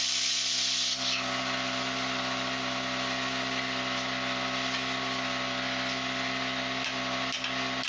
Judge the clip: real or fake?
real